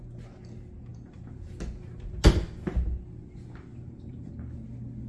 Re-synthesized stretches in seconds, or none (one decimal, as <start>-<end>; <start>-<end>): 0.9-1.6; 3.7-4.3